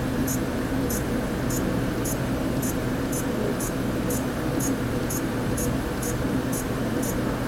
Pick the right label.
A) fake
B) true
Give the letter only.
A